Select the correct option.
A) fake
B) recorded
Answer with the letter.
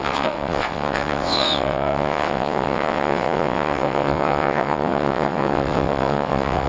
A